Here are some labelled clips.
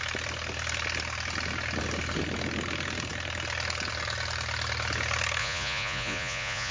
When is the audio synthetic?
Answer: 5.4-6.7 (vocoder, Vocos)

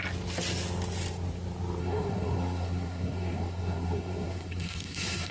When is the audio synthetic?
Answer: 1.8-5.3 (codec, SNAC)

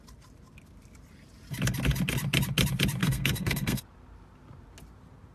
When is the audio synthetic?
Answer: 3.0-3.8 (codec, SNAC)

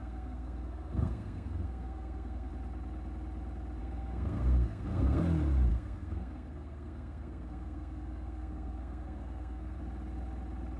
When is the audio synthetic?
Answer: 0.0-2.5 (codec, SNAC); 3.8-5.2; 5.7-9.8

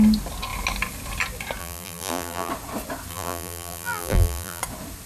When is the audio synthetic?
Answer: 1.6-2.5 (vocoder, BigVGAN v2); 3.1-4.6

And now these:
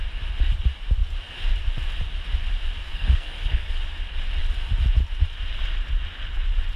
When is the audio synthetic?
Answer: 2.8-3.7 (codec, SNAC)

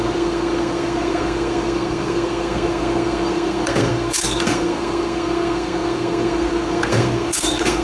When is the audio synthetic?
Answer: 0.0-7.8 (codec, SNAC)

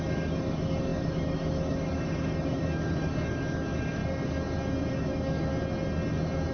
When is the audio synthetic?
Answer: 0.0-4.0 (autoencoder, DAC-VAE); 4.9-5.5